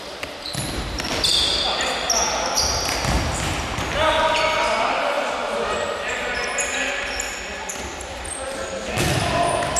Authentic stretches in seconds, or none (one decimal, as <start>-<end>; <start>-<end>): 0.0-9.8